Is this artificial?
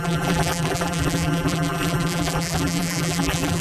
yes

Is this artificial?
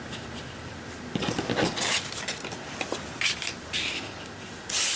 no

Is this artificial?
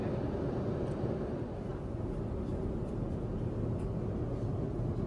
no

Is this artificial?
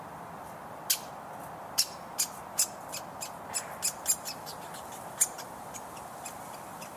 no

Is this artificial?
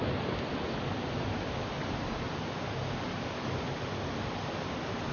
no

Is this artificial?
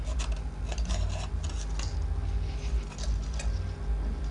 no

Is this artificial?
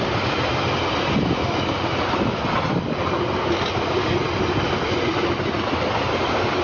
no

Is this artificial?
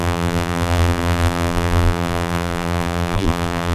yes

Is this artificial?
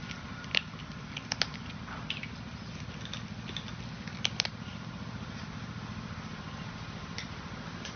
no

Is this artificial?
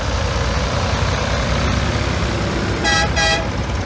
no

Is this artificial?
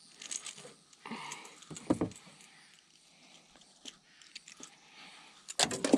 no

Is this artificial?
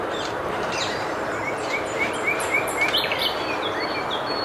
yes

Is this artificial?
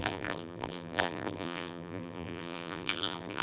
yes